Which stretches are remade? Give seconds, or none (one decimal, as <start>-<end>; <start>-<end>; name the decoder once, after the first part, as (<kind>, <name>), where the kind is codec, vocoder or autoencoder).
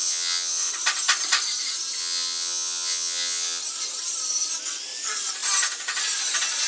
0.0-0.7 (vocoder, WaveNeXt); 2.0-3.6